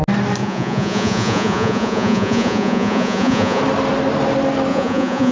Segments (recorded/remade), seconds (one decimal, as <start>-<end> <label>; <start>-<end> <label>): 0.0-0.4 recorded; 0.4-3.6 remade; 3.6-4.7 recorded; 4.7-5.3 remade